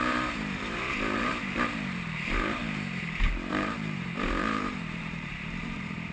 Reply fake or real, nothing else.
fake